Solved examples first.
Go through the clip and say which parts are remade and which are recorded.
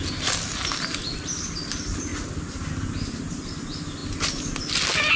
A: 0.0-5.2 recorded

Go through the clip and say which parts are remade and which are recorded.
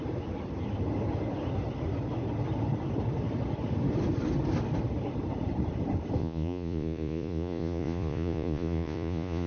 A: 0.0-6.2 recorded; 6.2-9.5 remade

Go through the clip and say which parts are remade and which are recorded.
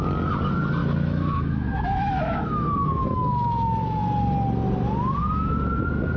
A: 0.0-0.8 recorded; 0.8-4.0 remade; 4.0-6.2 recorded